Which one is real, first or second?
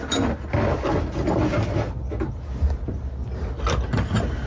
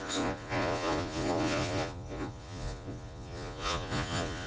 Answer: first